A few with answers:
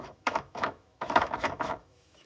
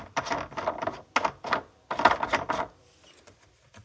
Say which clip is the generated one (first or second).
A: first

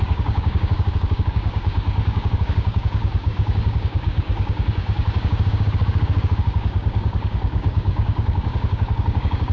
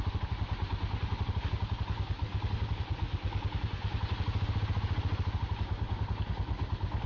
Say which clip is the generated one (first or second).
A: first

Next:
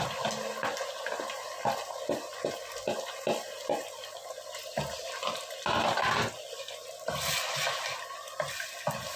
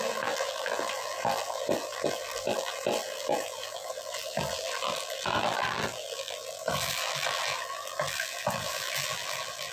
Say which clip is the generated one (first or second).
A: second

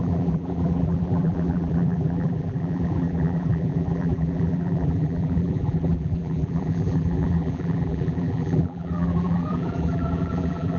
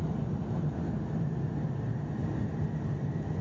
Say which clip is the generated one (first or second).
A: first